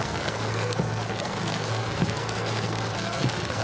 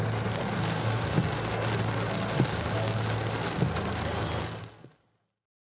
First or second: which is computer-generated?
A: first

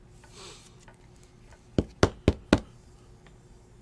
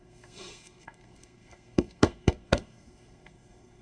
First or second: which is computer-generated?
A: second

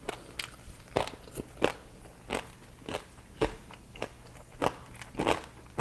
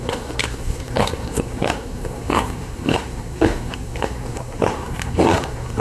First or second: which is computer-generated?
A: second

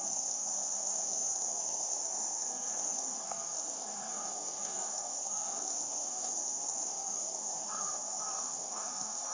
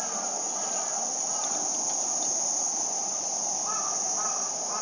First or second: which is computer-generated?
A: first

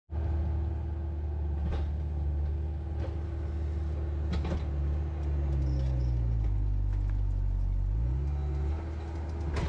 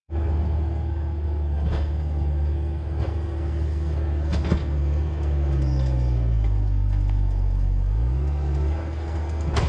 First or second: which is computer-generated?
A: second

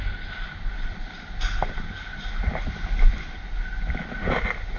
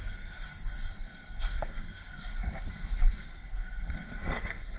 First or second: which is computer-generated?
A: second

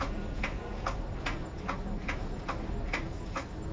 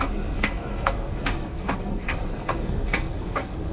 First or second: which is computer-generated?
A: second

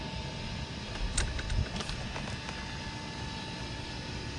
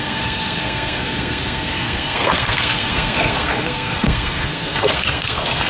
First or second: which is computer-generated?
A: second